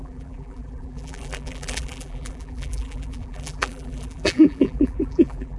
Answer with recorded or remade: remade